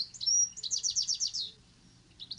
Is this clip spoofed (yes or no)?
no